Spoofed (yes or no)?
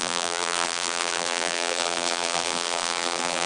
yes